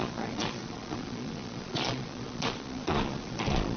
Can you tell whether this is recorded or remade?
remade